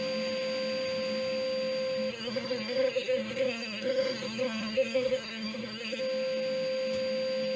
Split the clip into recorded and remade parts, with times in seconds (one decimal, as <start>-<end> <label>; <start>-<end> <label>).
0.0-2.1 recorded; 2.1-6.0 remade; 6.0-7.6 recorded